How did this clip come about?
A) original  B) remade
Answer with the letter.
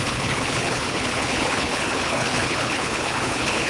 B